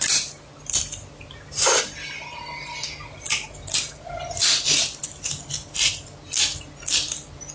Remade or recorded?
recorded